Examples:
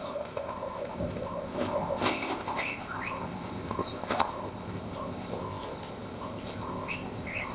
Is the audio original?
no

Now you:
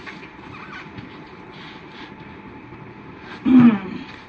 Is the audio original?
no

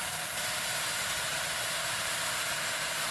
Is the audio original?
no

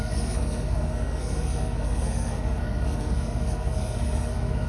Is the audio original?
no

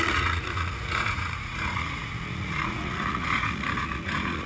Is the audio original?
no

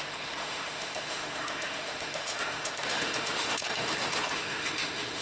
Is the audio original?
no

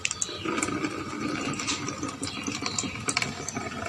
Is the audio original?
yes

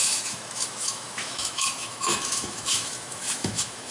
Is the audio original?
no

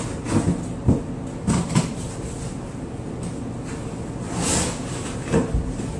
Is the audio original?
yes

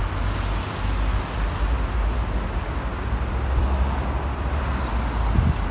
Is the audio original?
yes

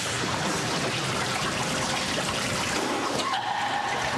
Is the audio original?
yes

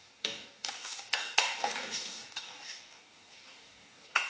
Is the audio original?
no